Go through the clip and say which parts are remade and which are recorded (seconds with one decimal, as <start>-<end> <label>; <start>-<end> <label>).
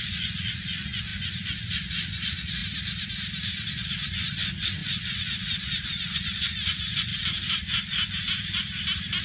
0.0-2.6 remade; 2.6-3.7 recorded; 3.7-7.1 remade; 7.1-9.2 recorded